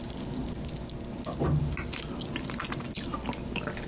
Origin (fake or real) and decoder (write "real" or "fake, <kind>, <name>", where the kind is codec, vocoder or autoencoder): real